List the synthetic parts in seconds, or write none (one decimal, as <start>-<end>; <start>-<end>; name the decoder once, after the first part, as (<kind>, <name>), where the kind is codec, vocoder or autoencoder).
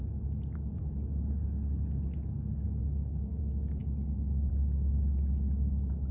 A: none